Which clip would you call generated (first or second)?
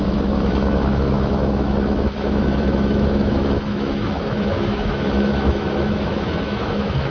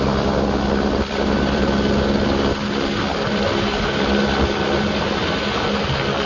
first